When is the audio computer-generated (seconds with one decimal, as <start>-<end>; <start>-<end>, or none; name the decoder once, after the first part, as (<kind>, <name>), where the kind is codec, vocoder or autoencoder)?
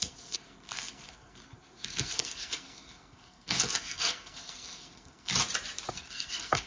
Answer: 0.0-5.3 (codec, SNAC); 5.9-6.7